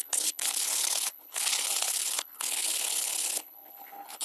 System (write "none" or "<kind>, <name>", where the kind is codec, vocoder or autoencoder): codec, HILCodec